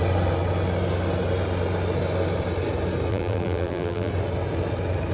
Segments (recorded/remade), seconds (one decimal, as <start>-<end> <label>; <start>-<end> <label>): 0.0-3.1 recorded; 3.1-4.1 remade; 4.1-5.1 recorded